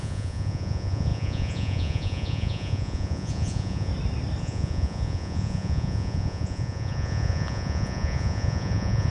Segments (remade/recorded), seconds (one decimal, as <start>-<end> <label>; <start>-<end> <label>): 0.0-3.9 remade; 3.9-4.4 recorded; 4.4-9.1 remade